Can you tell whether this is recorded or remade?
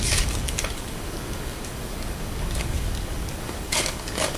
remade